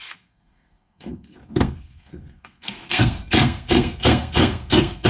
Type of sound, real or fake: fake